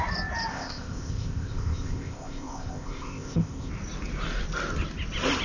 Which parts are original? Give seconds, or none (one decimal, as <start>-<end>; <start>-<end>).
0.0-0.5; 3.7-5.4